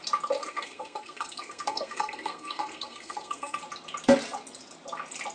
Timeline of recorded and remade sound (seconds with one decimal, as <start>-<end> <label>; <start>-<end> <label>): 0.0-0.4 recorded; 0.4-3.6 remade; 3.6-5.3 recorded